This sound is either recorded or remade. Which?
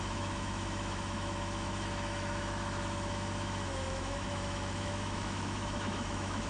remade